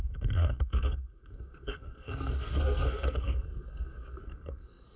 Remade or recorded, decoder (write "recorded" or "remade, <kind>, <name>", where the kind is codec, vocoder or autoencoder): remade, codec, SNAC